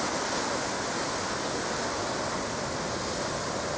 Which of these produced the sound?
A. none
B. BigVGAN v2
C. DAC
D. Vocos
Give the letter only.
A